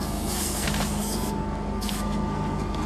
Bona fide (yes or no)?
no